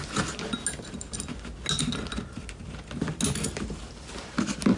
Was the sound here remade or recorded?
recorded